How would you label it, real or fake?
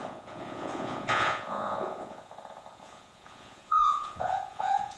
fake